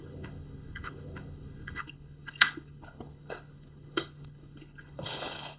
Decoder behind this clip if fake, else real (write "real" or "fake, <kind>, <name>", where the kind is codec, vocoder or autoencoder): fake, codec, HILCodec